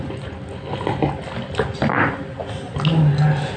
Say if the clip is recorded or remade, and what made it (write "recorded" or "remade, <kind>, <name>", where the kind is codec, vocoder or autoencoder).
recorded